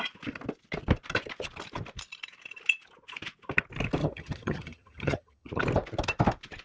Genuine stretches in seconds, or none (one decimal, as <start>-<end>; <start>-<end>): 0.0-4.0; 5.5-6.6

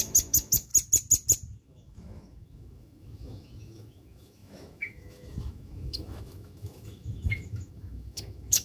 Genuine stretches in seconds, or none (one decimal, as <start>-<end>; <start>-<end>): 0.7-1.6

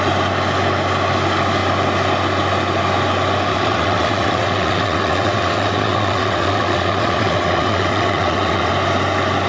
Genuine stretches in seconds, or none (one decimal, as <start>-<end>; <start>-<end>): 0.0-3.5; 8.7-9.5

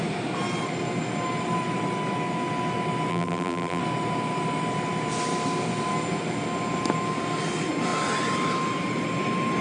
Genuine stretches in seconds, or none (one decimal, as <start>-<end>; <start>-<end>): 0.0-3.1; 3.8-9.6